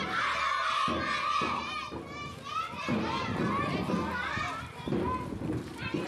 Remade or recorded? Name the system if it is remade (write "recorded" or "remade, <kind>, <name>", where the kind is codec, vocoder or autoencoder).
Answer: recorded